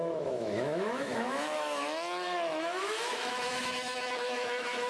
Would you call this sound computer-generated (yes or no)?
yes